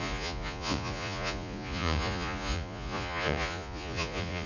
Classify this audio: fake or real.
fake